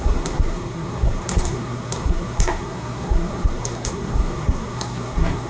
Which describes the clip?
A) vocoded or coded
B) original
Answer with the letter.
A